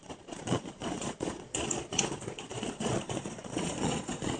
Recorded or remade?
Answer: remade